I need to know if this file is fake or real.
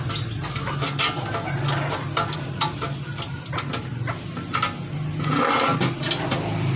real